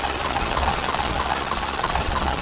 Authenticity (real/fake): fake